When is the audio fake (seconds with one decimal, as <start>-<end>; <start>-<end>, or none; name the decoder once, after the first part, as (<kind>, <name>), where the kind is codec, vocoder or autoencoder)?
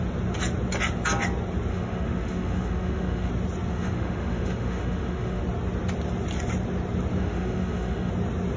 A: 1.7-3.3 (autoencoder, DAC-VAE); 3.7-5.4; 7.2-8.1